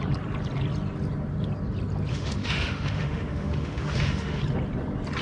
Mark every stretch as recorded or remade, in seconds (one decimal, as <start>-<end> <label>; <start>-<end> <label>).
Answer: 0.0-2.1 recorded; 2.1-4.4 remade; 4.4-5.2 recorded